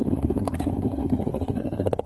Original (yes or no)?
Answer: no